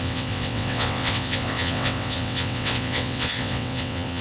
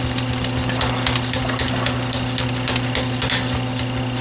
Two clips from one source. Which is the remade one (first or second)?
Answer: first